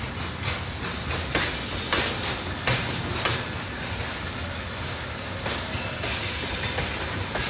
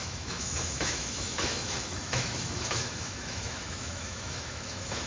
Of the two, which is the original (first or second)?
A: first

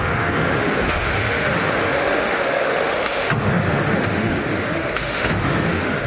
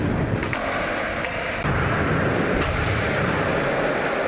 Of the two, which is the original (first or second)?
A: second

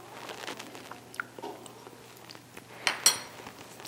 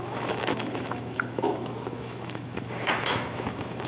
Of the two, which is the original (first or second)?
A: first